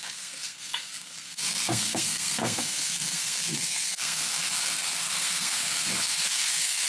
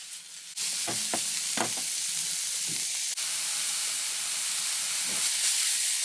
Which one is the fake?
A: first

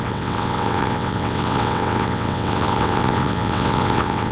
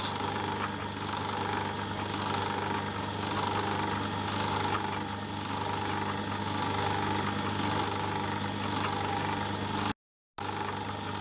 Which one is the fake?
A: first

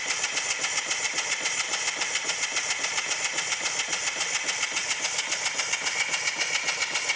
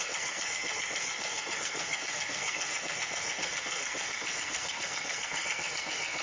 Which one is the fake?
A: second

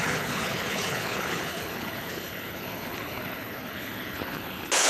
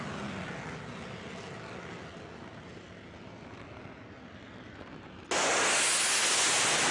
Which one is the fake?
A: first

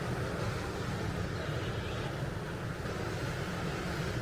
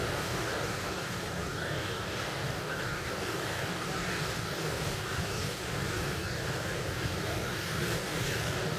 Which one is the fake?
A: second